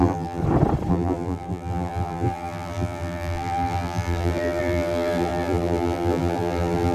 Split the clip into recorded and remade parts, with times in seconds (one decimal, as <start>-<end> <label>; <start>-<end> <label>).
0.0-0.4 remade; 0.4-0.9 recorded; 0.9-6.9 remade